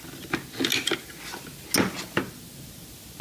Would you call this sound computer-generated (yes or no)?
no